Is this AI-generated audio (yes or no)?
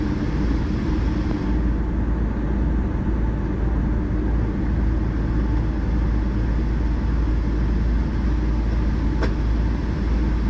no